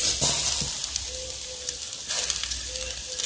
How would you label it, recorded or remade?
recorded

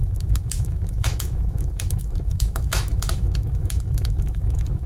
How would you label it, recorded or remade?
remade